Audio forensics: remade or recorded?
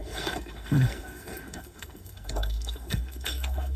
remade